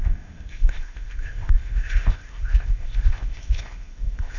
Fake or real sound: fake